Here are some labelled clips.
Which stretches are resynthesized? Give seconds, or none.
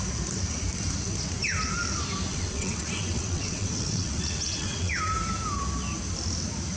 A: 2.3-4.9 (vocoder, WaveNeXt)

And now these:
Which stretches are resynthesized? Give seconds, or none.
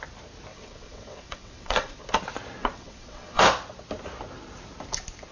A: 0.5-2.0 (vocoder, WaveNeXt); 2.6-3.4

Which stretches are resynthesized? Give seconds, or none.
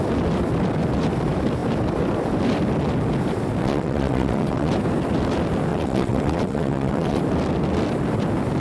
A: 3.6-4.7 (vocoder, WaveNeXt); 5.7-7.2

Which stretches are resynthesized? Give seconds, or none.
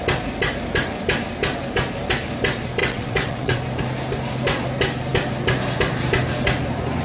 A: 2.8-3.6 (vocoder, WaveNeXt)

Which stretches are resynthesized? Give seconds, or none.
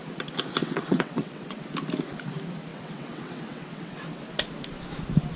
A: 0.6-1.6 (vocoder, WaveNeXt); 2.7-4.1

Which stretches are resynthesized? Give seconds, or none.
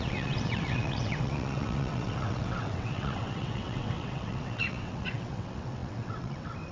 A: 0.0-6.7 (vocoder, WaveNeXt)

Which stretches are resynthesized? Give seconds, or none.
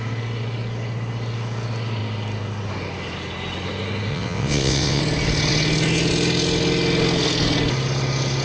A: 4.1-5.0 (vocoder, WaveNeXt)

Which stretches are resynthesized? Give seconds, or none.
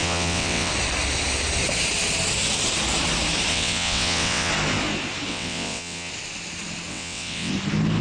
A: 0.0-0.7 (vocoder, WaveNeXt); 3.5-4.5; 5.3-6.1; 6.9-7.5